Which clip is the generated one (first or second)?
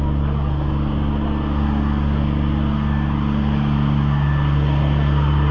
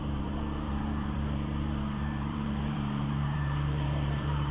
second